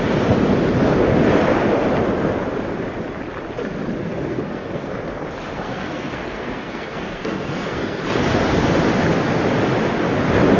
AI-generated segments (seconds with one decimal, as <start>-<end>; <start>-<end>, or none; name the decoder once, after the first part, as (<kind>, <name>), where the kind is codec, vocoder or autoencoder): 4.0-4.9 (codec, SNAC); 5.5-8.0